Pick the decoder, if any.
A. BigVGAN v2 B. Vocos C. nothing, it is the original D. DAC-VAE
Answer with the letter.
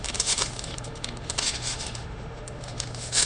D